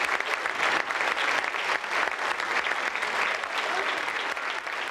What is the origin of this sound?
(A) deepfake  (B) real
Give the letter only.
B